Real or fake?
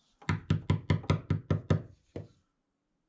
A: real